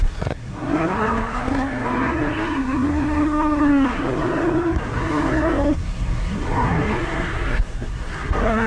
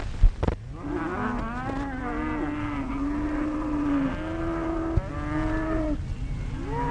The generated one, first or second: first